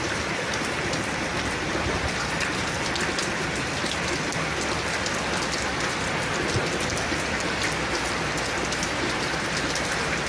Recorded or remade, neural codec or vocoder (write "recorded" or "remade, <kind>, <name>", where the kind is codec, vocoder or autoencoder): recorded